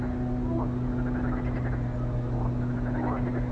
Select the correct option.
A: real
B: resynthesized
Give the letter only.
A